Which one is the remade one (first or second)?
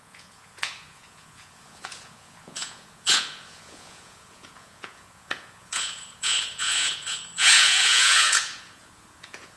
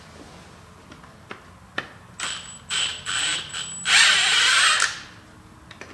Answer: first